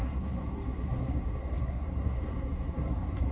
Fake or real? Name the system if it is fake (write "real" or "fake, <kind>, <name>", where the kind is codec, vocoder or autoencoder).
fake, codec, SNAC